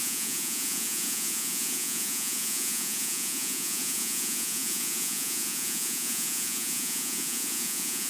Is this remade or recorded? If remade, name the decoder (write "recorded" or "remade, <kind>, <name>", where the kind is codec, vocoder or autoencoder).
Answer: remade, vocoder, Vocos